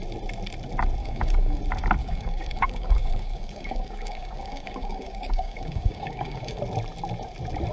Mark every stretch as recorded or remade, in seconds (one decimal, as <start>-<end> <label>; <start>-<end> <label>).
0.0-1.0 recorded; 1.0-1.6 remade; 1.6-2.0 recorded; 2.0-6.6 remade; 6.6-7.7 recorded